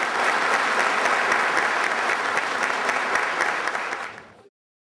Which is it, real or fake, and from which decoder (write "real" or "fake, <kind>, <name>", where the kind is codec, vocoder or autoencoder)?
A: fake, vocoder, BigVGAN v2